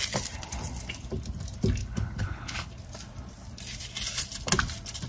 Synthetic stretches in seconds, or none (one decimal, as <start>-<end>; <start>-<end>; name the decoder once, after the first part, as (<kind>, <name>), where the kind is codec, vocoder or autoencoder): 1.8-2.7 (codec, HILCodec)